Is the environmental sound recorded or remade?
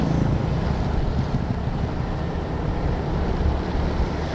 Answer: recorded